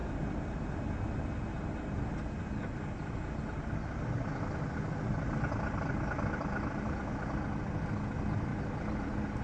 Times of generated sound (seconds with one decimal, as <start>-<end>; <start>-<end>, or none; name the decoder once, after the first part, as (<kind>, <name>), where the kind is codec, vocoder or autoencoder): none